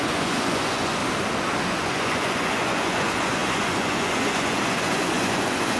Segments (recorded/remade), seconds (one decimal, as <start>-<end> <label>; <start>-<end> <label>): 0.0-1.0 remade; 1.0-1.7 recorded; 1.7-5.8 remade